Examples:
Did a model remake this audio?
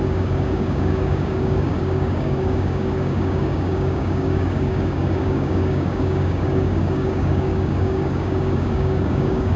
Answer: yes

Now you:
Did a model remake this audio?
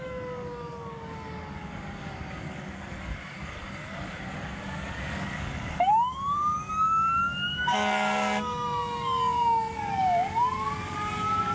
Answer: yes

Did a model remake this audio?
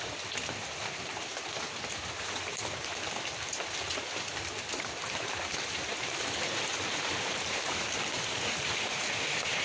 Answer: no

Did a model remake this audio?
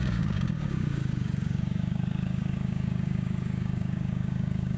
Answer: yes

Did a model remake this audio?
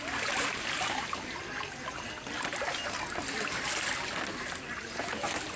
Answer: no